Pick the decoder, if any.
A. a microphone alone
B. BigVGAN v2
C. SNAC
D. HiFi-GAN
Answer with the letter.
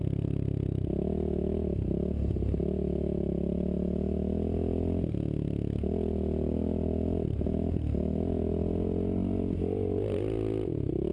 A